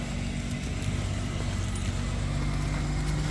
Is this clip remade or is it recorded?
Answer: recorded